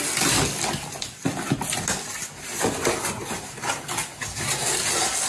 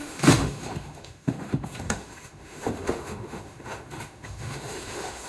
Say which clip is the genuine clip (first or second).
first